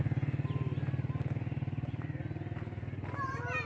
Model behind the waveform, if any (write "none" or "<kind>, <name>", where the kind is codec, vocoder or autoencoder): none